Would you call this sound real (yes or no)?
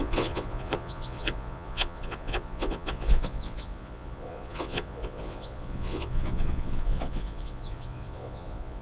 no